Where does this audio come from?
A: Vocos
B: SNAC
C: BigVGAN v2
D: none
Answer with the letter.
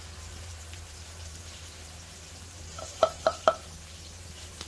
C